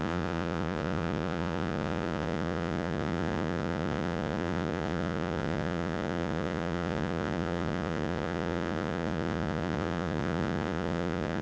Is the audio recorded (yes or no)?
no